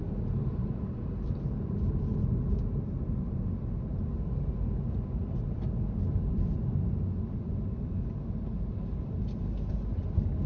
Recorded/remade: recorded